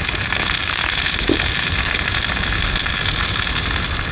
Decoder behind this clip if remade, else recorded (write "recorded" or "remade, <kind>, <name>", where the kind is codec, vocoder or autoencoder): recorded